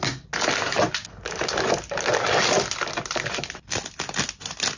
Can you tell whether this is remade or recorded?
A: recorded